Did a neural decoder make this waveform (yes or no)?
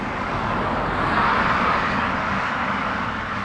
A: yes